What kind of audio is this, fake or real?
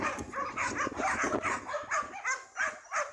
real